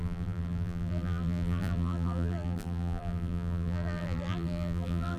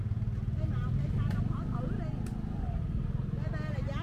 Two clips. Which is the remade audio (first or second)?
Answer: first